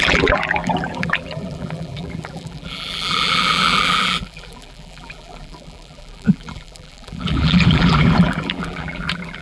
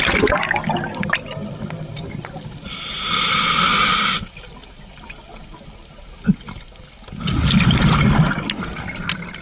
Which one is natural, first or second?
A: second